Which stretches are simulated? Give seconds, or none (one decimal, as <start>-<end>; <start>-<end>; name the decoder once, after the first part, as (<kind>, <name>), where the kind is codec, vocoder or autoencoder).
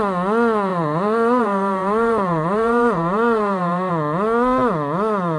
0.7-3.9 (vocoder, BigVGAN v2)